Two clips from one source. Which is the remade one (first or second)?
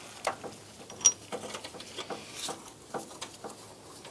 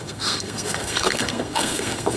second